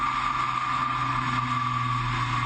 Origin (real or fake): real